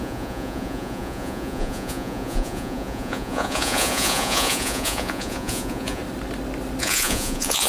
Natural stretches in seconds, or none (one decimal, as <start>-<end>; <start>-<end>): 6.0-6.8

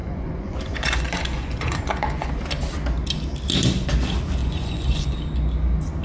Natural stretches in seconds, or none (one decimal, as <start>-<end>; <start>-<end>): 2.3-4.4; 5.2-6.0

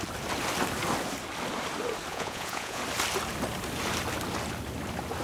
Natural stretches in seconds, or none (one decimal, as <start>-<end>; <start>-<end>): 0.0-2.1; 2.8-5.2

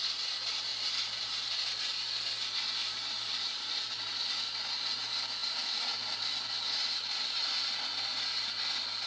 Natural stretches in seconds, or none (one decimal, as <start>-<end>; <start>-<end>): 0.0-9.1

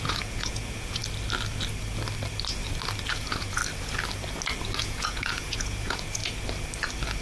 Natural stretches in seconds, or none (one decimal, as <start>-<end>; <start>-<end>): 1.0-3.1; 3.6-4.8; 6.2-7.2

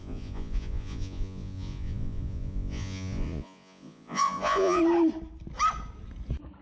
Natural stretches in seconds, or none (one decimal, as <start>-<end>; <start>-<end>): 4.8-6.6

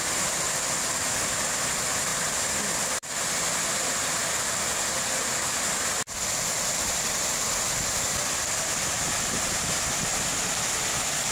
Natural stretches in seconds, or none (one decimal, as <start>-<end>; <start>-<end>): 0.0-11.3

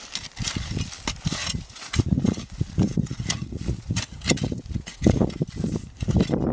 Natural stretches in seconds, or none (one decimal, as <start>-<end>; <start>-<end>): 0.0-1.4; 5.3-6.5